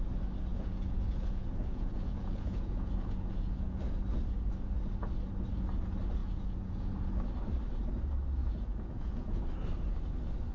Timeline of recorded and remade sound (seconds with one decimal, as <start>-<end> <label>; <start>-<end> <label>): 0.0-0.5 recorded; 0.5-3.8 remade; 3.8-6.2 recorded; 6.2-6.9 remade; 6.9-8.4 recorded; 8.4-9.4 remade; 9.4-10.5 recorded